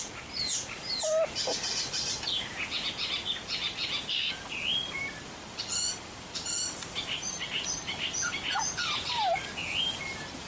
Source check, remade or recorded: recorded